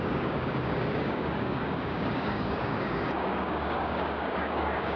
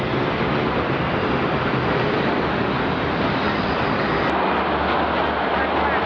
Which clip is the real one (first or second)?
second